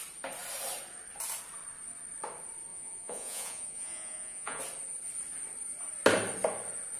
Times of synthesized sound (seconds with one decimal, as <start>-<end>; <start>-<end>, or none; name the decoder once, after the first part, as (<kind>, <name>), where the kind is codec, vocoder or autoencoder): 2.7-4.6 (vocoder, Vocos)